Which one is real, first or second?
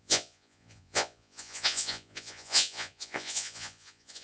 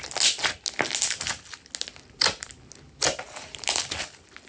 second